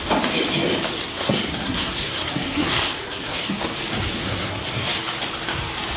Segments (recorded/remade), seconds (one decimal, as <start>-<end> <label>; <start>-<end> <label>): 0.0-1.1 recorded; 1.1-3.6 remade; 3.6-4.2 recorded; 4.2-4.9 remade; 4.9-6.0 recorded